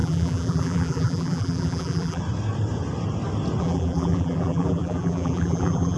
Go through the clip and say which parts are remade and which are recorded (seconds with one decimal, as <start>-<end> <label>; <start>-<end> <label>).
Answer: 0.0-2.2 remade; 2.2-3.6 recorded; 3.6-6.0 remade